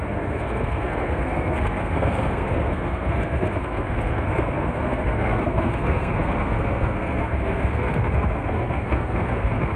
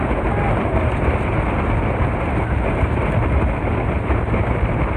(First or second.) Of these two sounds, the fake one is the first